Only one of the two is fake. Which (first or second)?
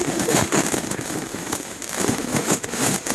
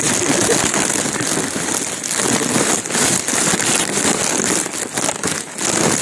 first